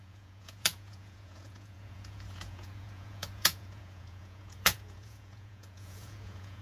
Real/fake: fake